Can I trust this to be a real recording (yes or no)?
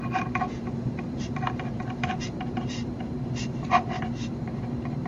no